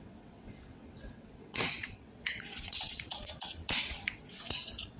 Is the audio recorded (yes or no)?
no